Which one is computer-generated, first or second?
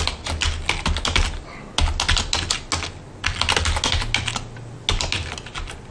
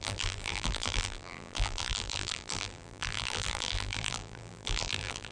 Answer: second